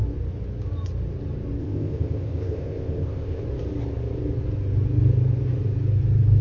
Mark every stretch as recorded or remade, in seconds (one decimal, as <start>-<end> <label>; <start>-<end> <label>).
0.0-1.6 recorded; 1.6-3.4 remade; 3.4-6.4 recorded